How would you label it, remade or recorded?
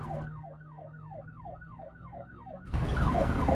remade